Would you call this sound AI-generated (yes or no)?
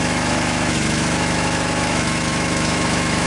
yes